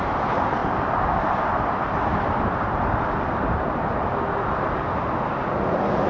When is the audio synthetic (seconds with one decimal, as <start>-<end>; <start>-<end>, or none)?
0.6-1.4; 2.1-3.0

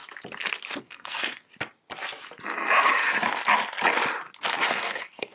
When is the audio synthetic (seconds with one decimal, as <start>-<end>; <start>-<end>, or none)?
0.8-1.5; 4.7-5.3

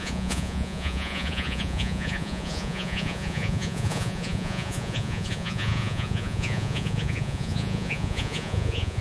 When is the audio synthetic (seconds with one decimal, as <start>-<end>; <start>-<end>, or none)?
0.0-9.0